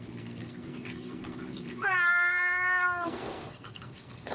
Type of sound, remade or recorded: remade